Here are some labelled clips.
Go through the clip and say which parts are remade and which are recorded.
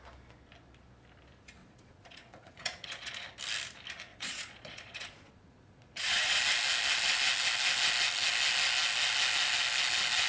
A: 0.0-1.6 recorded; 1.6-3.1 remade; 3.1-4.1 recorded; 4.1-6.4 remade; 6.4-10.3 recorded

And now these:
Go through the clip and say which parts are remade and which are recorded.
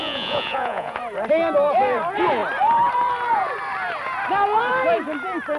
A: 0.0-1.0 remade; 1.0-5.6 recorded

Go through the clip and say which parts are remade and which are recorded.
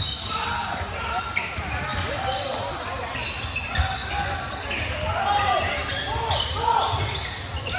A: 0.0-7.8 recorded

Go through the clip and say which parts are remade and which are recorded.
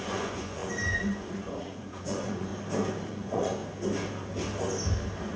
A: 0.0-2.5 remade; 2.5-3.1 recorded; 3.1-3.6 remade; 3.6-5.4 recorded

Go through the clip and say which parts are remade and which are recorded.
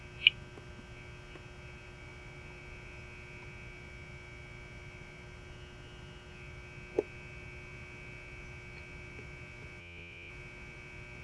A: 0.0-9.8 recorded; 9.8-10.3 remade; 10.3-11.2 recorded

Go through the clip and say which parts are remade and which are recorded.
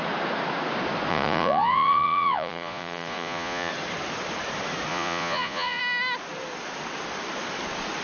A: 0.0-1.1 recorded; 1.1-3.7 remade; 3.7-4.9 recorded; 4.9-5.8 remade; 5.8-8.0 recorded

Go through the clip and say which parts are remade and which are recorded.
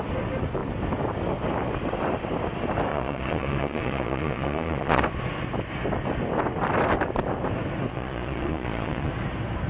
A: 0.0-2.9 recorded; 2.9-5.0 remade; 5.0-7.9 recorded; 7.9-9.1 remade; 9.1-9.7 recorded